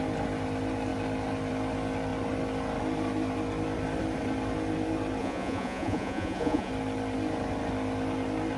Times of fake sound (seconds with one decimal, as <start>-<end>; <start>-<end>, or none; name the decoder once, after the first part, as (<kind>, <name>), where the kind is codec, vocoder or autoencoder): 5.2-6.7 (vocoder, Vocos)